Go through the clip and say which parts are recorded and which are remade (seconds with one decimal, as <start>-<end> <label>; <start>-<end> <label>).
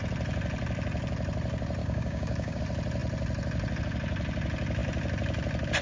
0.0-1.8 recorded; 1.8-2.6 remade; 2.6-5.8 recorded